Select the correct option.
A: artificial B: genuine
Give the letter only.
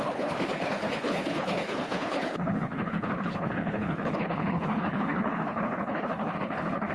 A